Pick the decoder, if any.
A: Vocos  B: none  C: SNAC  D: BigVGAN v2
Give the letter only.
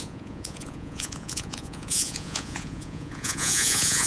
A